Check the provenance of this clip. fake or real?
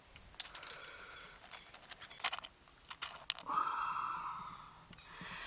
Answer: real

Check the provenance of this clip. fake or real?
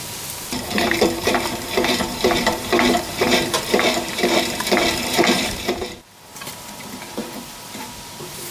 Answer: fake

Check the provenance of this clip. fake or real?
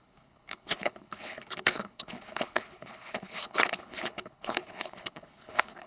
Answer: fake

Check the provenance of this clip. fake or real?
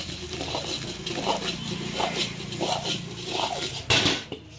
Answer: real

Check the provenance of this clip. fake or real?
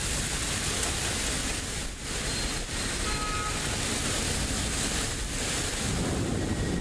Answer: real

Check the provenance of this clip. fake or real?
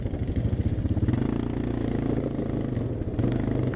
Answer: real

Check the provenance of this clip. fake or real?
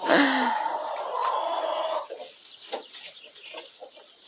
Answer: real